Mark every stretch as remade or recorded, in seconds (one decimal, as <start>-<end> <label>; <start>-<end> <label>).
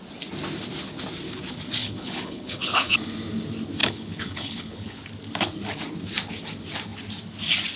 0.0-1.8 recorded; 1.8-3.0 remade; 3.0-3.8 recorded; 3.8-5.0 remade; 5.0-7.8 recorded